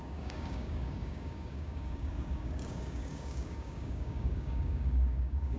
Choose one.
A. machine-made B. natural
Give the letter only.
A